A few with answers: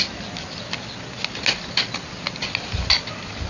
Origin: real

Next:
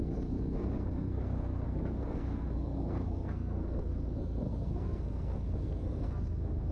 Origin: fake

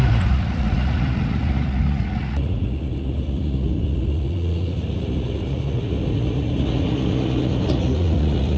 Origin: fake